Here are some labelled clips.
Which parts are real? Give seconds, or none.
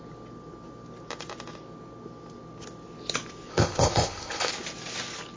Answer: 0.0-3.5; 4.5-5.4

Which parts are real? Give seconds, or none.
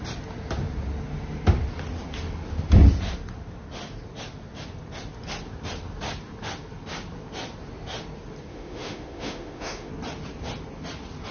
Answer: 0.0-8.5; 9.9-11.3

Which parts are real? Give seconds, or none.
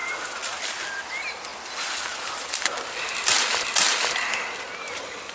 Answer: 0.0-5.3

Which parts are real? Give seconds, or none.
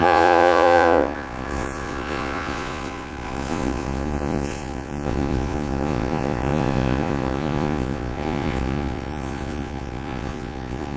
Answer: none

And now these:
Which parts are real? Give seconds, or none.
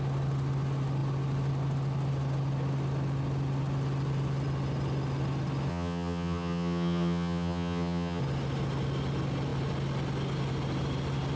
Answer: 0.0-5.7; 8.2-11.4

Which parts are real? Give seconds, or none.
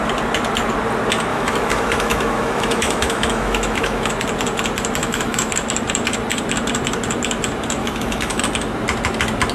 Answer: 0.0-1.3; 4.1-5.0; 5.5-7.8; 8.4-9.5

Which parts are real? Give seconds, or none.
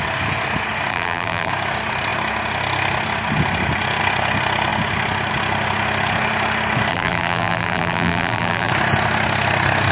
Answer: 0.0-0.9; 1.5-6.9; 8.7-9.9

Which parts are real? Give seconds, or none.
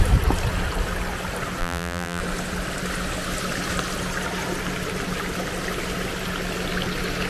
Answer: 0.0-1.6; 2.2-7.3